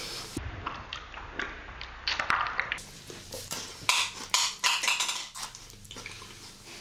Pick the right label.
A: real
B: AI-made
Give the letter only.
B